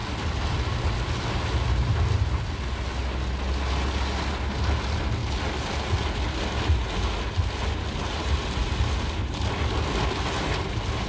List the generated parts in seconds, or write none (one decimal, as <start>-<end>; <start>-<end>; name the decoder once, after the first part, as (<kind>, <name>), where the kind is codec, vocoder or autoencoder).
none